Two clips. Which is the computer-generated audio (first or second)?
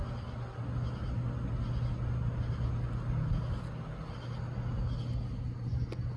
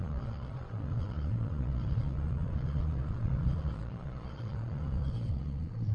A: second